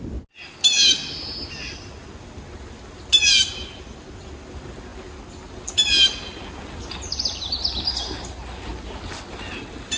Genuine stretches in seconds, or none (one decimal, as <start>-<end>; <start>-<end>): 0.0-10.0